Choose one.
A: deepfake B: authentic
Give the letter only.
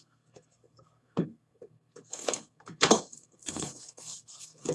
A